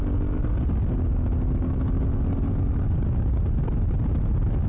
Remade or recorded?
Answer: recorded